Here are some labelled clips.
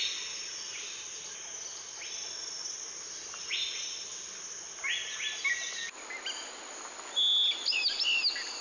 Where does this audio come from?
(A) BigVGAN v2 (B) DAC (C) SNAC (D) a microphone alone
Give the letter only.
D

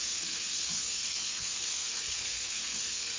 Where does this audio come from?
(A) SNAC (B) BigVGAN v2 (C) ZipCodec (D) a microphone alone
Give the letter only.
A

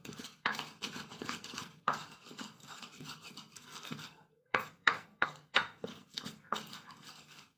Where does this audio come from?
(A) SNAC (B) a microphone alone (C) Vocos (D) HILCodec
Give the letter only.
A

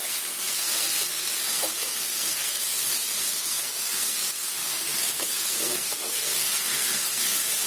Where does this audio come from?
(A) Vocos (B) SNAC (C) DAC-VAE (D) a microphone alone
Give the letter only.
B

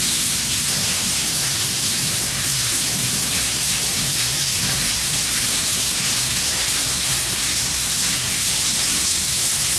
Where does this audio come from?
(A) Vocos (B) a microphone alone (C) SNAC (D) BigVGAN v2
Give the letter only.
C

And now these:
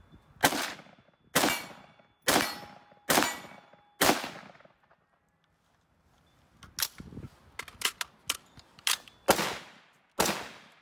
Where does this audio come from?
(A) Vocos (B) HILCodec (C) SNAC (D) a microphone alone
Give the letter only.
D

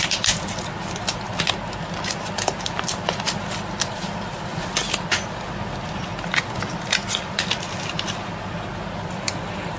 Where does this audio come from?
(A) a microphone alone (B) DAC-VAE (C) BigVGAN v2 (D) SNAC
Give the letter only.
A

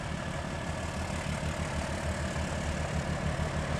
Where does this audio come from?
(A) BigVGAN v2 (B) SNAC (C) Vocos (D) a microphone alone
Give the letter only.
D